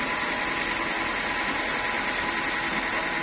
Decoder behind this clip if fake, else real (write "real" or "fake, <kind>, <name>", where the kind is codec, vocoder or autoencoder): real